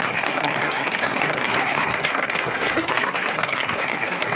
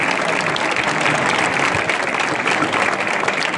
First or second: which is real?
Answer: second